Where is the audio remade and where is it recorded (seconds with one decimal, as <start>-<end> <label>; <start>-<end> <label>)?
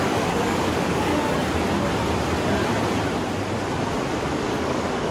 0.0-1.1 remade; 1.1-4.2 recorded; 4.2-5.1 remade